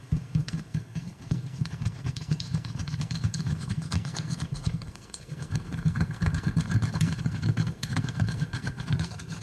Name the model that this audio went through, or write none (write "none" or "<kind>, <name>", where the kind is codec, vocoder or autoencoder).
codec, SNAC